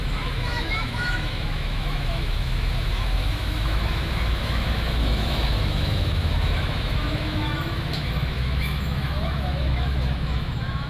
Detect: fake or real fake